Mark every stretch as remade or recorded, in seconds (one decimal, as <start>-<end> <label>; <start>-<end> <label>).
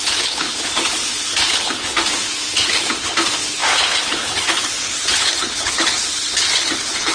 0.0-7.1 remade